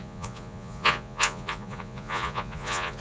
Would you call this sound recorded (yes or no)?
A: no